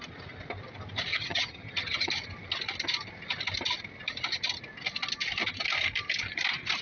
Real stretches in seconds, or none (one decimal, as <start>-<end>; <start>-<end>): 0.0-1.1; 2.1-6.8

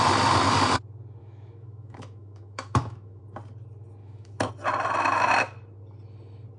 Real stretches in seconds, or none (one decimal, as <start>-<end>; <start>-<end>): 0.0-1.2; 3.2-4.0; 4.5-6.6

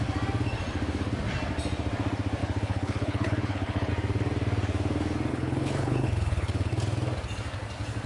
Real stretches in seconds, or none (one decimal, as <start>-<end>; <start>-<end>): 0.0-2.4; 3.9-5.3; 6.7-8.1